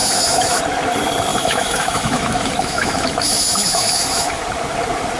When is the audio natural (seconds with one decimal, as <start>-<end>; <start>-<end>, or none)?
0.6-1.3; 4.4-5.2